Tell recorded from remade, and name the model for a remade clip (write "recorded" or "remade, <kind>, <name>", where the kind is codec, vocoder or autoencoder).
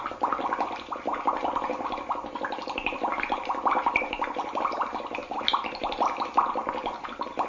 recorded